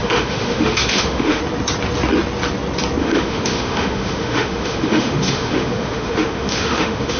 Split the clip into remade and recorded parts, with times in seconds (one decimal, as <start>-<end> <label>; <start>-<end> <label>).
0.0-1.4 remade; 1.4-3.0 recorded; 3.0-7.2 remade